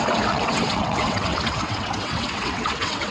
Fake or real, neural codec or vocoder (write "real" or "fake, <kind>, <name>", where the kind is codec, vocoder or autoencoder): fake, vocoder, WaveNeXt